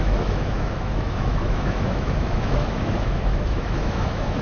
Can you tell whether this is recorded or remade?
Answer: remade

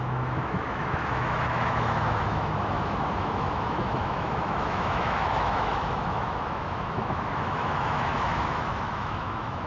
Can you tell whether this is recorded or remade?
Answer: remade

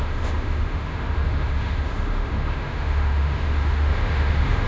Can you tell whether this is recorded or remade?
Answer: remade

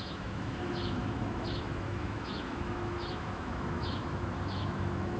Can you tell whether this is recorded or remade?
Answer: remade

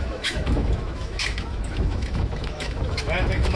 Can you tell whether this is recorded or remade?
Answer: remade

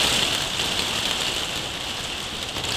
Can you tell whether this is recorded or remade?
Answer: recorded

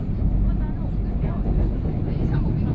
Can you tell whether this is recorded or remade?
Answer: recorded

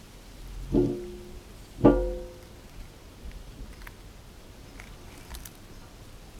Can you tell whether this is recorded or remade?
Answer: recorded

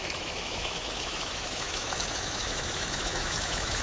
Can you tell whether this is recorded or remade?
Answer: remade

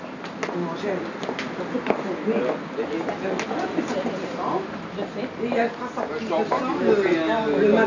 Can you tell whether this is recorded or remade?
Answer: recorded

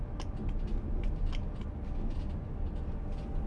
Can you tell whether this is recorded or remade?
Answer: recorded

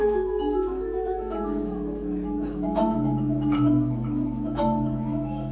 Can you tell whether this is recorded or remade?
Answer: remade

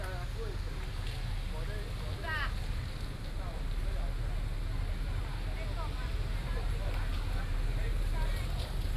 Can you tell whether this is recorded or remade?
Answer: recorded